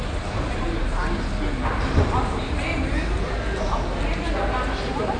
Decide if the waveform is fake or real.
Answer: real